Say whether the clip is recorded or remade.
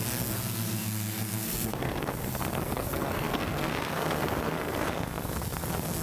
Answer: remade